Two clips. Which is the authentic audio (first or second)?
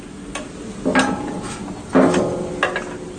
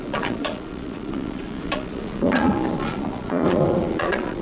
first